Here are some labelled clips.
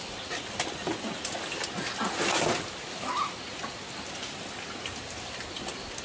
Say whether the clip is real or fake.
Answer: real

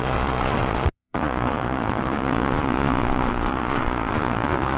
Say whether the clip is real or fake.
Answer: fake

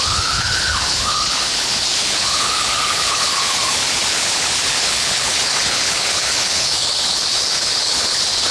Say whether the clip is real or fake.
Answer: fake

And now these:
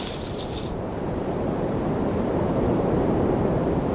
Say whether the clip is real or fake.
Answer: fake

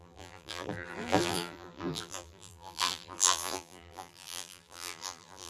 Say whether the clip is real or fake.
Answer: fake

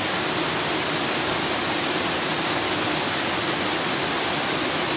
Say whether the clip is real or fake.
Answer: real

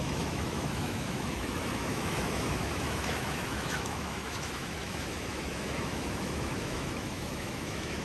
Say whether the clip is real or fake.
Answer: fake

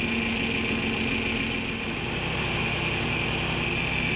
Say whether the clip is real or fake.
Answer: real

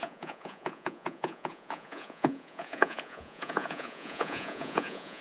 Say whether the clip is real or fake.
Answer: fake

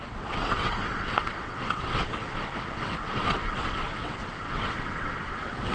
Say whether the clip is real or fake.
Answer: fake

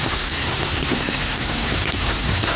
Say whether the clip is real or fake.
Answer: fake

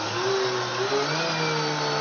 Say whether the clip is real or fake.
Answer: real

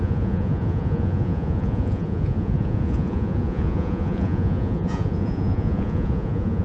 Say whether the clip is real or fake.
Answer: fake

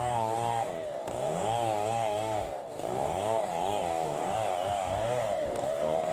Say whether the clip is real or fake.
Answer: fake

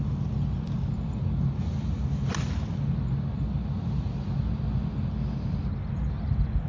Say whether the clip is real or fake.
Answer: real